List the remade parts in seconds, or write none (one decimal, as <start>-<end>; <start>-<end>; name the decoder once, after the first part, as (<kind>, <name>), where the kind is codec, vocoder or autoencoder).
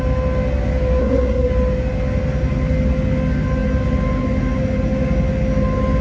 1.0-1.5 (codec, SNAC)